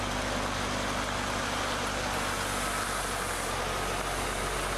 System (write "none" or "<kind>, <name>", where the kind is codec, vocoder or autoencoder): none